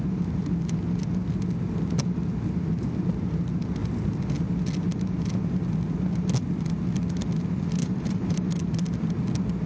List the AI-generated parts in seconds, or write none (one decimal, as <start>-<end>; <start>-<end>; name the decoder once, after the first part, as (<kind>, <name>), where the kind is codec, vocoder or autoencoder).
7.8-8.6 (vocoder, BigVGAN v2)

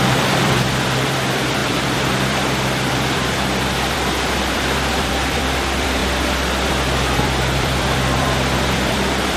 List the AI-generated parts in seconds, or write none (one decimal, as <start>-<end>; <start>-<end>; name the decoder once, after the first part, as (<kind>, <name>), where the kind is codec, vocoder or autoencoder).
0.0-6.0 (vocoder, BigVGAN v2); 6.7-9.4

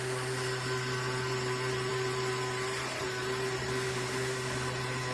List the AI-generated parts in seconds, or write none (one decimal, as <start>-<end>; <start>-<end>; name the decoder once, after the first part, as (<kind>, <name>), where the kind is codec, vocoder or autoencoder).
none

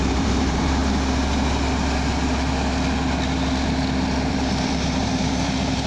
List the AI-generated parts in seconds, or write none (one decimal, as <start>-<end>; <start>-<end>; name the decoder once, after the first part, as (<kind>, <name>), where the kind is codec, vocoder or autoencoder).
0.0-0.8 (vocoder, BigVGAN v2); 4.3-5.9

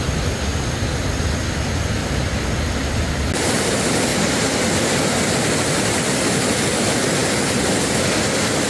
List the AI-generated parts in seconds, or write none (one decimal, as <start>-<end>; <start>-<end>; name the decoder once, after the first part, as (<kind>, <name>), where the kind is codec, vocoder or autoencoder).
7.2-7.8 (vocoder, BigVGAN v2)

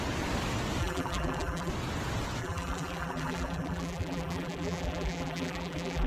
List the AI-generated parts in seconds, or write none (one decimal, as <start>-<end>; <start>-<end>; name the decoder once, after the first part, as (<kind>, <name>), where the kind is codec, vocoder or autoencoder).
0.8-1.7 (vocoder, BigVGAN v2); 2.4-6.1

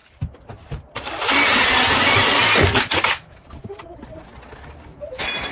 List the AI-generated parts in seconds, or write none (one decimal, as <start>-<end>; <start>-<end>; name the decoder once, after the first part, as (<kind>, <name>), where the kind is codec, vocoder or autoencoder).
0.0-3.3 (vocoder, BigVGAN v2)